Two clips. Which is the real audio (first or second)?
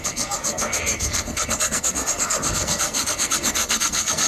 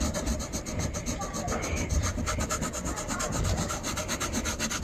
second